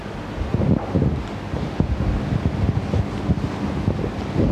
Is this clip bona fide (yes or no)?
yes